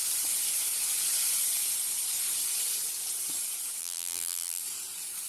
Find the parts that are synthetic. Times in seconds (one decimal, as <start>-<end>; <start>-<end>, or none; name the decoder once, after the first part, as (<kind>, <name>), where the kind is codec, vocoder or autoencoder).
3.8-4.6 (vocoder, BigVGAN v2)